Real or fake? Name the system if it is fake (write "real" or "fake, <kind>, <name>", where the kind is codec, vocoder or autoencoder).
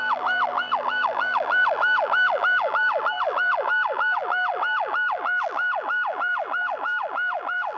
fake, vocoder, BigVGAN v2